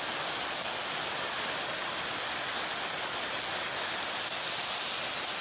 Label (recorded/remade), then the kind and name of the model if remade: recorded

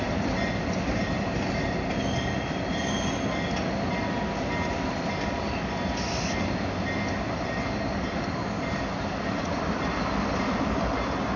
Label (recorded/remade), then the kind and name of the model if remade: recorded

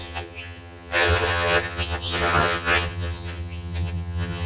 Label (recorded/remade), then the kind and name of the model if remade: remade, vocoder, HiFi-GAN